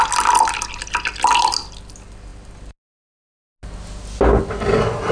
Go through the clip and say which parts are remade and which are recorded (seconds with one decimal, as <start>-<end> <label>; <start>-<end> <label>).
0.0-5.1 recorded